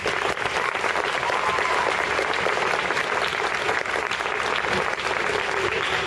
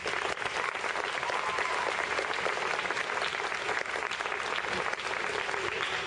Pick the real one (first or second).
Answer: second